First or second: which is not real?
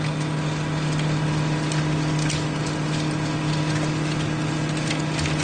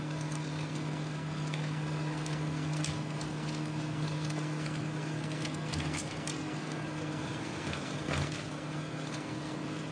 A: second